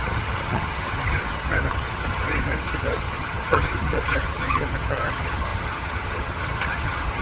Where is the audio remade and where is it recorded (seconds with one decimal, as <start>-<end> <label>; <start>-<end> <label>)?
0.0-7.2 remade